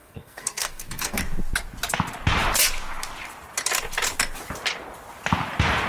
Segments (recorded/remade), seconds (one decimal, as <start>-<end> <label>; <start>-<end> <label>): 0.0-1.2 remade; 1.2-5.9 recorded